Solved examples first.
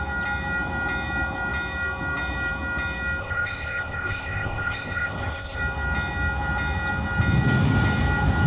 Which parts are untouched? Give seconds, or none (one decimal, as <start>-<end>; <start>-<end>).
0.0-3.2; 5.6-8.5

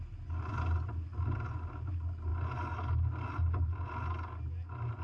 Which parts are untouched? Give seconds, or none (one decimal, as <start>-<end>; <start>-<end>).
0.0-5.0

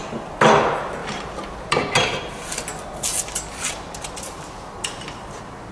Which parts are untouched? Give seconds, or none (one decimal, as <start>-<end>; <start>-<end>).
0.0-5.7

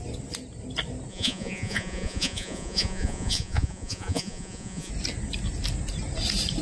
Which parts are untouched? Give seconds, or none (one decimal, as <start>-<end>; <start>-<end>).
0.0-1.1; 4.9-6.6

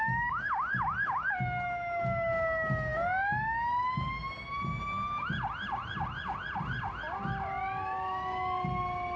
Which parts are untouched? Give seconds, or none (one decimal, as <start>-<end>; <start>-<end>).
0.0-9.2

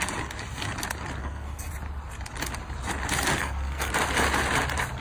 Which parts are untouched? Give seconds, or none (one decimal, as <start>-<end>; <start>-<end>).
0.0-1.2; 1.7-3.4; 3.9-5.0